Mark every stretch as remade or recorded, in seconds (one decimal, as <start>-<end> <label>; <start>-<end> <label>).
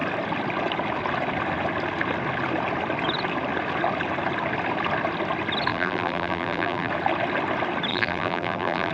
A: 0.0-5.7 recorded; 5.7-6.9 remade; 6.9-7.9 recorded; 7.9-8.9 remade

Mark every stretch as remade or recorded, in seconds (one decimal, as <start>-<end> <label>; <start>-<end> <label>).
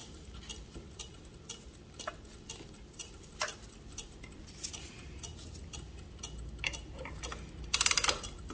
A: 0.0-8.5 recorded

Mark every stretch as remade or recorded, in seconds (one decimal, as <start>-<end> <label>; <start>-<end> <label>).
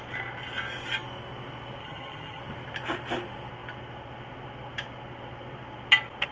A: 0.0-1.8 recorded; 1.8-2.4 remade; 2.4-6.3 recorded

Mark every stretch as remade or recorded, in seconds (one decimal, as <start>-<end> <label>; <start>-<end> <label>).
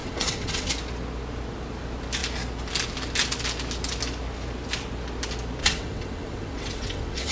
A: 0.0-0.7 remade; 0.7-5.6 recorded; 5.6-7.3 remade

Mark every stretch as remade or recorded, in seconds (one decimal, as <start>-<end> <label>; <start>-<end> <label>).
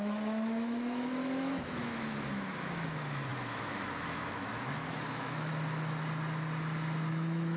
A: 0.0-5.5 remade; 5.5-7.1 recorded; 7.1-7.6 remade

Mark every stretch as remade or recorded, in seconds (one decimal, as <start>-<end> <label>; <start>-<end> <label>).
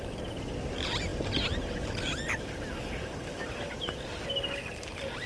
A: 0.0-5.3 recorded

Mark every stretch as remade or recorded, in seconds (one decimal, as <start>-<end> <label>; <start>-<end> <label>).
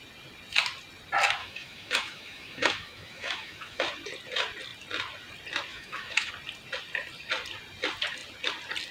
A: 0.0-1.4 recorded; 1.4-3.8 remade; 3.8-5.7 recorded; 5.7-6.3 remade; 6.3-8.9 recorded